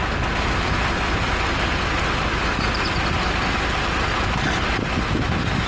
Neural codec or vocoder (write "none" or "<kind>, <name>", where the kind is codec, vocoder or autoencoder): none